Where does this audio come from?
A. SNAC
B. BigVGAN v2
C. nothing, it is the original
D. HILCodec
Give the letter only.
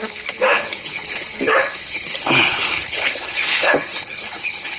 D